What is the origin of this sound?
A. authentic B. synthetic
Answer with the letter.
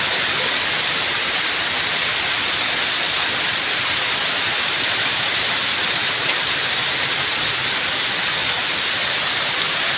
B